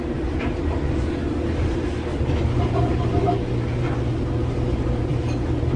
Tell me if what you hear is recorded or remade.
recorded